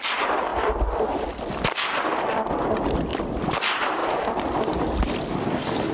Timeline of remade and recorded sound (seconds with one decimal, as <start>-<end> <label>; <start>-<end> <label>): 0.0-0.5 recorded; 0.5-1.5 remade; 1.5-3.1 recorded; 3.1-3.6 remade; 3.6-4.0 recorded; 4.0-5.9 remade